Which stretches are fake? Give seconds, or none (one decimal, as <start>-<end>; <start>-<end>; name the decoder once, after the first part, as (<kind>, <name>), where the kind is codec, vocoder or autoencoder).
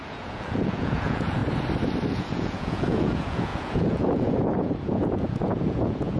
0.0-1.4 (vocoder, Vocos); 2.1-6.2